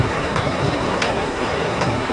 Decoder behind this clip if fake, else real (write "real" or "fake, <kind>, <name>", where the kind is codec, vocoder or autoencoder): fake, codec, SNAC